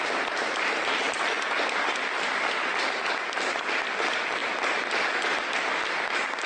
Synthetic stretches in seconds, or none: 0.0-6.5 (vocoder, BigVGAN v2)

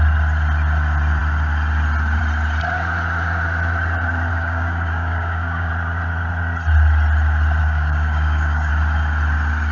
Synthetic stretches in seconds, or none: 4.3-5.7 (codec, DAC); 7.6-8.7